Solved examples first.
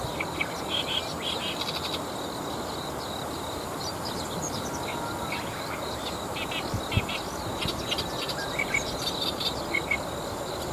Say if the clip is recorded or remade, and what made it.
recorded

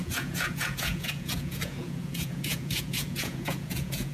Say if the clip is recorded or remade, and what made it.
remade, vocoder, Vocos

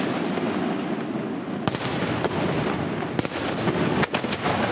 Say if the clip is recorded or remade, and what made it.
recorded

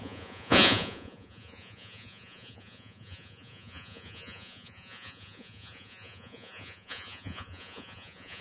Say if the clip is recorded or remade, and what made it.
remade, vocoder, Vocos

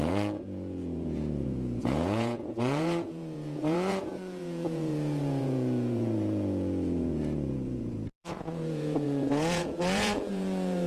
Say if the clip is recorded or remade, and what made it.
remade, vocoder, Vocos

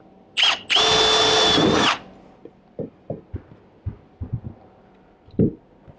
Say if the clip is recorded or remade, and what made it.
recorded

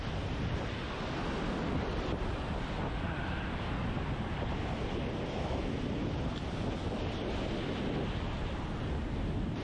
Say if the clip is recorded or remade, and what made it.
recorded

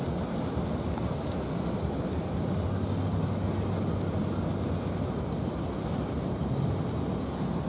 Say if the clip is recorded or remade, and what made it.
recorded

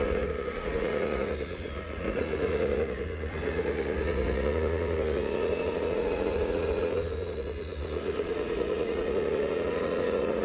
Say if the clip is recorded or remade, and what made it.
remade, vocoder, Vocos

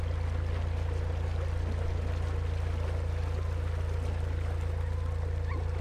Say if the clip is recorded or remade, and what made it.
recorded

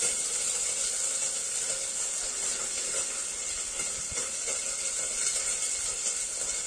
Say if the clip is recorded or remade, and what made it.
recorded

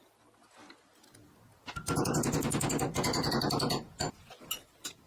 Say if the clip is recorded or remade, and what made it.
recorded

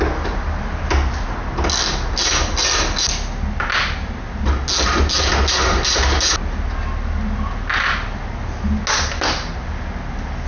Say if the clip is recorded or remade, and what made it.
recorded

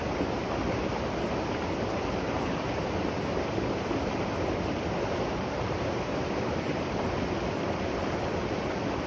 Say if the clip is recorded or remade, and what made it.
recorded